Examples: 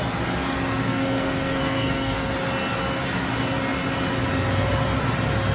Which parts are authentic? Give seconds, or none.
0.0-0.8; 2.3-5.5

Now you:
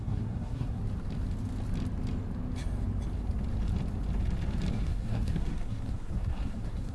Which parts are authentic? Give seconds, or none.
0.8-4.7

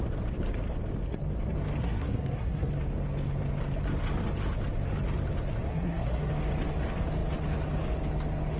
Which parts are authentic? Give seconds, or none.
0.0-1.8; 2.7-5.7; 6.3-8.6

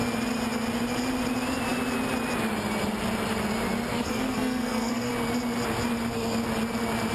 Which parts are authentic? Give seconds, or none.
0.0-3.9; 5.1-7.1

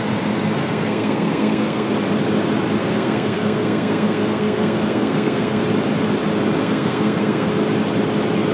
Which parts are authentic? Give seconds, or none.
0.0-0.6; 1.9-2.8; 5.6-6.6; 7.5-8.5

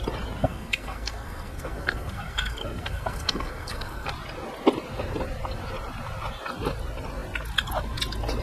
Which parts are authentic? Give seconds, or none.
0.0-0.4; 4.1-8.4

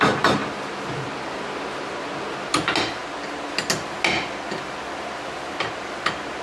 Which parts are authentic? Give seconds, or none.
0.0-6.4